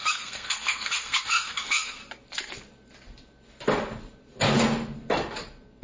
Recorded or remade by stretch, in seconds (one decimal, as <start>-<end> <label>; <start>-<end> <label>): 0.0-2.0 remade; 2.0-5.8 recorded